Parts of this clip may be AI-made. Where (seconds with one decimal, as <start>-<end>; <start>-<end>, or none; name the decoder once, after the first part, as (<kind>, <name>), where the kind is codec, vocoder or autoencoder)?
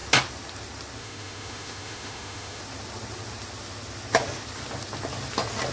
1.0-2.6 (autoencoder, DAC-VAE)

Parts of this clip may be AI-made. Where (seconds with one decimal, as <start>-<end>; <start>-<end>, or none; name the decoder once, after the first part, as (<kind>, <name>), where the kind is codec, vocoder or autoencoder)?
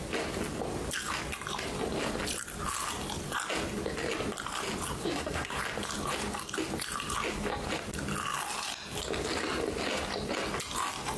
5.0-5.6 (codec, SNAC)